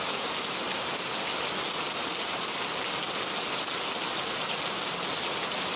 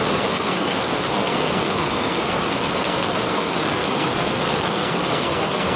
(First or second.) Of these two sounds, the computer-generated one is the second